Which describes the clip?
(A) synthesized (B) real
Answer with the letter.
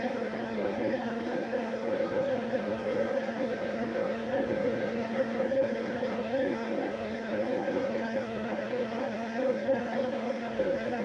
A